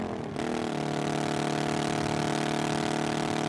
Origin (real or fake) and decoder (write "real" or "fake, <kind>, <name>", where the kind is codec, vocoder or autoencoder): real